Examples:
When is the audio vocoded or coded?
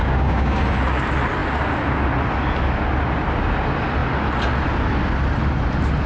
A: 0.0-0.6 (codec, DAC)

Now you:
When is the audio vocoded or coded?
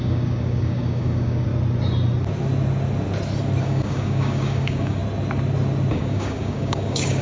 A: 0.0-1.5 (codec, DAC); 3.6-5.0; 5.9-7.2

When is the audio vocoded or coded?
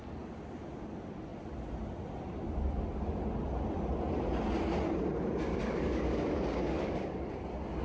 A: 5.5-7.3 (codec, DAC)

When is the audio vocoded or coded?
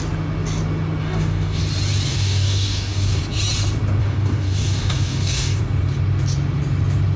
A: 1.0-1.6 (codec, DAC); 2.1-3.2; 4.0-5.6